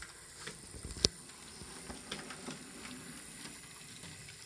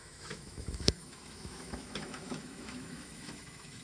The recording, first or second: first